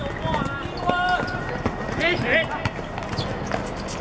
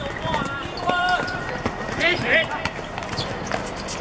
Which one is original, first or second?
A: first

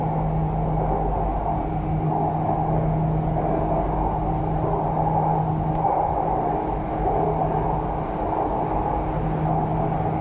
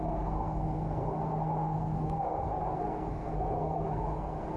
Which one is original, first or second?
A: first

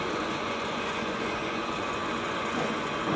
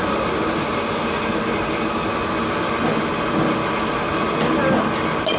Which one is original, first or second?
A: second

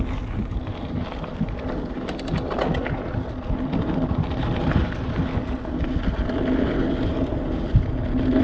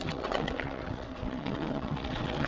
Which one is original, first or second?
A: first